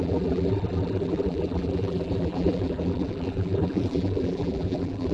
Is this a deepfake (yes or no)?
yes